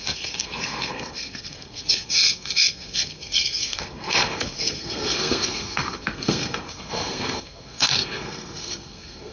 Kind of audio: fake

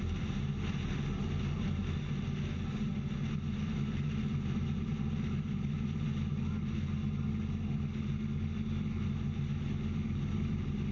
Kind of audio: real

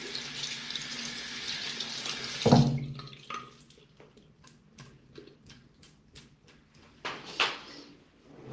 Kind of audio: real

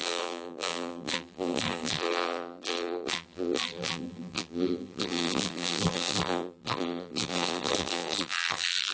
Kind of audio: fake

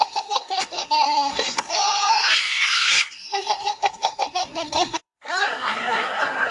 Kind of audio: fake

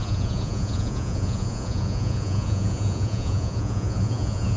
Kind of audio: fake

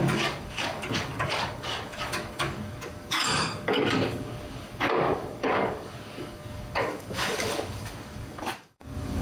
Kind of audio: fake